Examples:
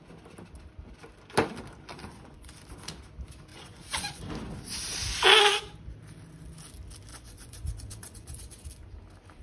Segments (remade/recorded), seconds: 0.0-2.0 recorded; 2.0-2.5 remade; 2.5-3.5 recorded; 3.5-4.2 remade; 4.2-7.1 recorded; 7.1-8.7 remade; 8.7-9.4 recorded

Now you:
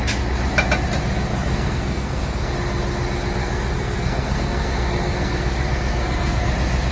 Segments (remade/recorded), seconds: 0.0-1.3 recorded; 1.3-2.5 remade; 2.5-3.4 recorded; 3.4-6.5 remade; 6.5-6.9 recorded

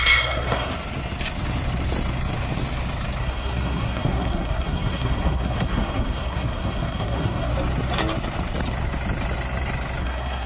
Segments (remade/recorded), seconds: 0.0-0.7 remade; 0.7-3.2 recorded; 3.2-7.5 remade; 7.5-10.0 recorded; 10.0-10.5 remade

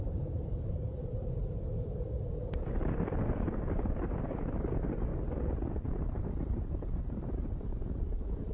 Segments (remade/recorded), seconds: 0.0-1.2 remade; 1.2-3.3 recorded; 3.3-5.1 remade; 5.1-5.9 recorded; 5.9-8.5 remade

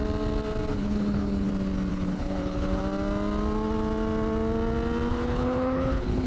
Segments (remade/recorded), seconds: 0.0-0.7 recorded; 0.7-1.5 remade; 1.5-1.9 recorded; 1.9-2.8 remade; 2.8-5.1 recorded; 5.1-6.3 remade

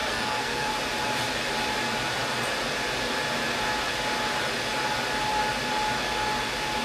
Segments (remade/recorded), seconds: 0.0-0.7 remade; 0.7-6.8 recorded